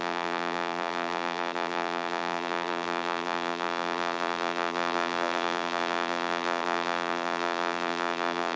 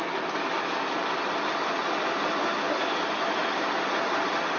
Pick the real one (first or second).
second